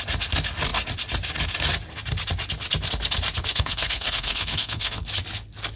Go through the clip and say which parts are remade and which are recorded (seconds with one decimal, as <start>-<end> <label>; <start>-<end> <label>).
0.0-3.5 recorded; 3.5-5.0 remade; 5.0-5.8 recorded